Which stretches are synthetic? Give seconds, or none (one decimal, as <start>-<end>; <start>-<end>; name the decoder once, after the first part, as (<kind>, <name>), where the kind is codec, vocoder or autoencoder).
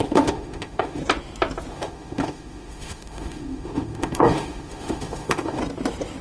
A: 0.0-1.0 (autoencoder, DAC-VAE); 1.7-5.6